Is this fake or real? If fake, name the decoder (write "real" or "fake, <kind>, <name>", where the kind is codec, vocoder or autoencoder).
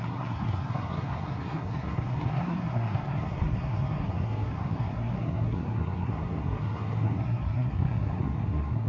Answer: fake, codec, SNAC